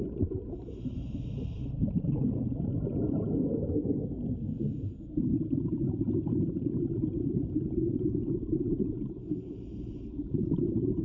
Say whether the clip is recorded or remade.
remade